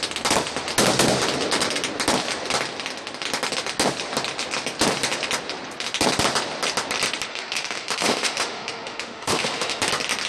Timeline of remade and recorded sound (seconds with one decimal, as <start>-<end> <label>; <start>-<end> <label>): 0.0-7.3 recorded; 7.3-9.9 remade; 9.9-10.3 recorded